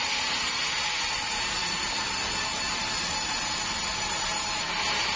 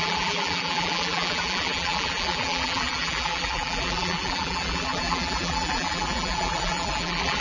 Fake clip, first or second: second